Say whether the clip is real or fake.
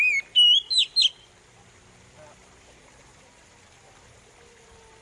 real